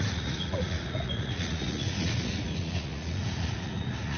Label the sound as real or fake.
fake